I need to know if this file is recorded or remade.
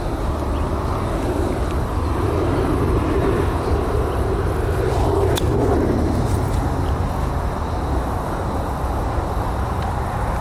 recorded